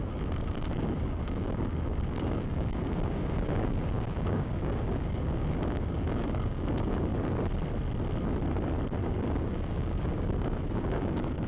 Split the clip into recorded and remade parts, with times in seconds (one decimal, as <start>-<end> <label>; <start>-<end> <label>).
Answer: 0.0-7.1 remade; 7.1-9.0 recorded; 9.0-11.5 remade